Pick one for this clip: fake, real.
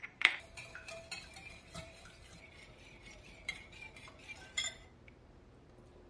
fake